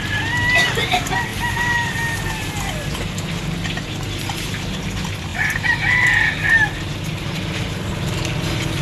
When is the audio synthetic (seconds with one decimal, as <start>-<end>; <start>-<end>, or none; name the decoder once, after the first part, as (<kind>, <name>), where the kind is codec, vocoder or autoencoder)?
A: none